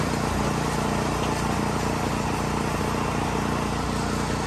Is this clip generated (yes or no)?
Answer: no